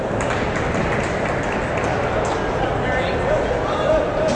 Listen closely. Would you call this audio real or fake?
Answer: real